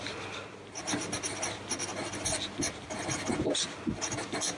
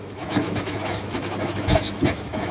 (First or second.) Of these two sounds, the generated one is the second